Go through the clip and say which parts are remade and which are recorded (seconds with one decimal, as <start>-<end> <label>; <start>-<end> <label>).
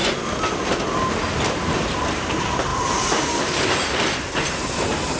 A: 0.0-1.1 recorded; 1.1-5.2 remade